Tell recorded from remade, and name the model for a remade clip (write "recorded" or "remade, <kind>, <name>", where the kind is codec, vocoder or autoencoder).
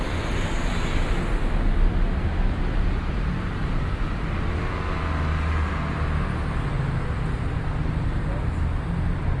recorded